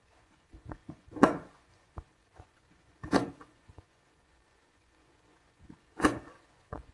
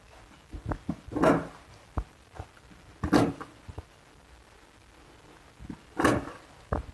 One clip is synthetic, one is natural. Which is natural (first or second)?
second